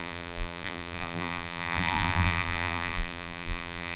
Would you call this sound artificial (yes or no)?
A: yes